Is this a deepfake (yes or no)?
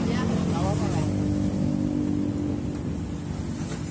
no